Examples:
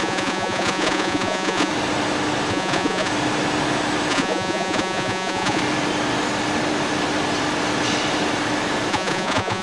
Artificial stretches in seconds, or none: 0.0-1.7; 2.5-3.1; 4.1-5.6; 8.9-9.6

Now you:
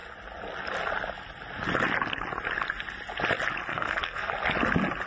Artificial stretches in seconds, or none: 3.7-4.3

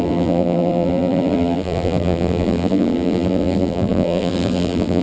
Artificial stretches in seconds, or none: 0.0-5.0

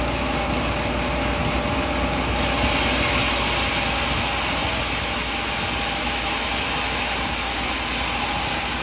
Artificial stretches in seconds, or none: none

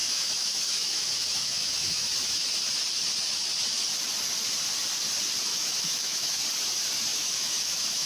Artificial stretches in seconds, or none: 0.0-2.1; 5.5-6.4; 7.1-8.1

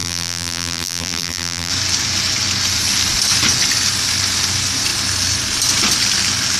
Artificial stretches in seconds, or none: 0.0-1.7

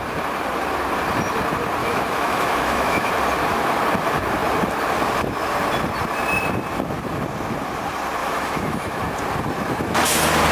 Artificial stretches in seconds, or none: 1.8-3.1; 8.2-9.0